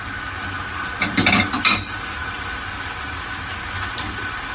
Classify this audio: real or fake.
real